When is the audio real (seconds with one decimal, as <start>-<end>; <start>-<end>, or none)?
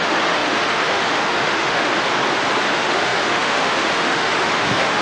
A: 1.9-2.7